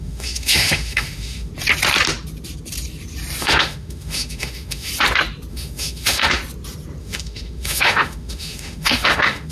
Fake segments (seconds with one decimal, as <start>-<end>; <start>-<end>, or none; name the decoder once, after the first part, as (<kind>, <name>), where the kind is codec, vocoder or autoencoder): 0.0-1.5 (autoencoder, DAC-VAE); 3.4-4.9; 5.5-6.4; 7.0-9.5